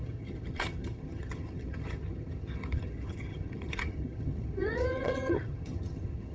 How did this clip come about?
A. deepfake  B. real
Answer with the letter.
A